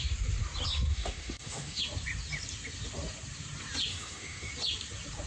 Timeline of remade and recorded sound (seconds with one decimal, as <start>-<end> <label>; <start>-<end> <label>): 0.0-0.9 recorded; 0.9-1.8 remade; 1.8-3.9 recorded; 3.9-4.5 remade; 4.5-5.3 recorded

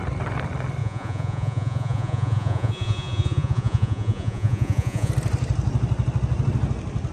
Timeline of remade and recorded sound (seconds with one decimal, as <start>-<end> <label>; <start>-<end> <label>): 0.0-0.8 recorded; 0.8-5.1 remade; 5.1-7.1 recorded

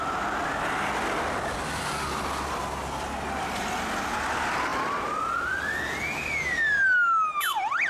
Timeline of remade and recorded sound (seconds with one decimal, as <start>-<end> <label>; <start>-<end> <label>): 0.0-7.9 recorded

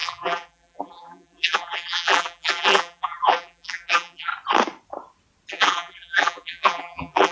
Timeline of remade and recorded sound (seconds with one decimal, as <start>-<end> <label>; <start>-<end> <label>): 0.0-4.3 remade; 4.3-5.5 recorded; 5.5-7.3 remade

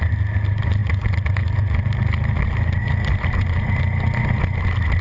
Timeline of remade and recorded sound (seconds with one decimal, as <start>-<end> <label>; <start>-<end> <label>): 0.0-5.0 recorded